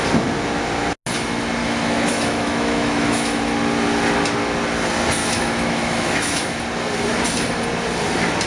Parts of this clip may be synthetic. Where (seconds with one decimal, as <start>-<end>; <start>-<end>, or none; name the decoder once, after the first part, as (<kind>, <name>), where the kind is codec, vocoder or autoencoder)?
1.6-3.4 (autoencoder, DAC-VAE); 5.2-6.6